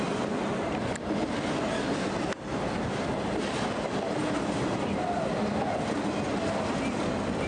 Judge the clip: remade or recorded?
recorded